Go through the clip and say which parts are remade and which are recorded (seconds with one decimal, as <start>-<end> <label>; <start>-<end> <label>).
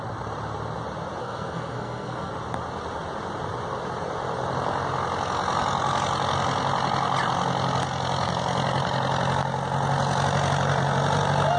0.0-1.2 recorded; 1.2-2.3 remade; 2.3-11.6 recorded